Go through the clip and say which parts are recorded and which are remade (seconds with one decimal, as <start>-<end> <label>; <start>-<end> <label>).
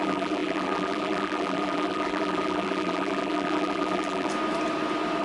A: 0.0-4.3 remade; 4.3-5.2 recorded